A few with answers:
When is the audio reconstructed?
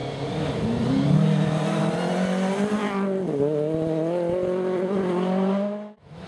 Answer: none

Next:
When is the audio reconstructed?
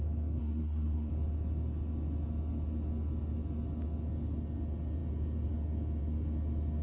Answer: 0.4-1.1 (codec, SNAC)